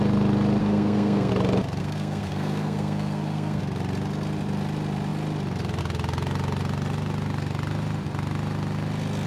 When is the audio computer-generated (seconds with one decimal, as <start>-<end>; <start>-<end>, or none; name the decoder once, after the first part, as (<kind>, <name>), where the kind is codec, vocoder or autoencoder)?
0.6-1.3 (codec, SNAC); 1.8-3.6